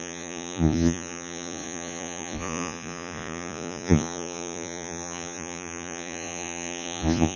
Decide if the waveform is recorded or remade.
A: remade